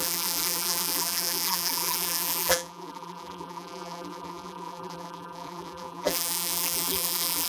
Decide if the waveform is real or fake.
fake